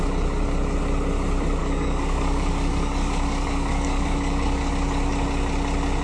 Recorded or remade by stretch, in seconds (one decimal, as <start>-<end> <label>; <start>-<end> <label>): 0.0-1.6 recorded; 1.6-4.7 remade; 4.7-6.0 recorded

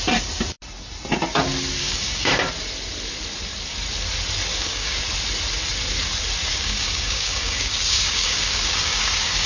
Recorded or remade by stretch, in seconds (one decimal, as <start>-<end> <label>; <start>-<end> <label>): 0.0-1.8 recorded; 1.8-2.4 remade; 2.4-4.5 recorded; 4.5-5.0 remade; 5.0-6.5 recorded; 6.5-9.5 remade

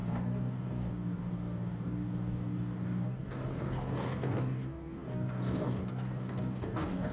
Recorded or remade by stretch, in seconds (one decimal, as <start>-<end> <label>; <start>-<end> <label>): 0.0-7.1 remade

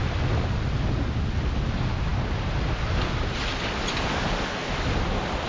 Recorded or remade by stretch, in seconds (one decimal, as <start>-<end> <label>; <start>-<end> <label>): 0.0-5.5 recorded

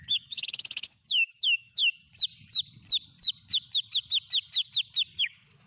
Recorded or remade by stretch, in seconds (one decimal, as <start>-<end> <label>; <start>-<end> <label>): 0.0-1.8 remade; 1.8-5.2 recorded; 5.2-5.7 remade

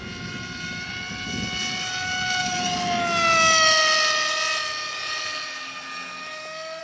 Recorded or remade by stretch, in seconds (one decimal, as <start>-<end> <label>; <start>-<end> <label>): 0.0-6.8 recorded

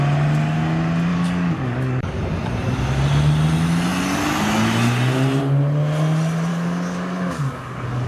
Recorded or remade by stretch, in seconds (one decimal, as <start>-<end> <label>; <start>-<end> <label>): 0.0-1.1 recorded; 1.1-2.2 remade; 2.2-6.5 recorded; 6.5-8.1 remade